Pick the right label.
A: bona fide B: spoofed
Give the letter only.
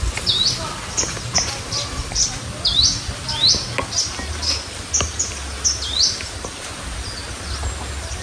A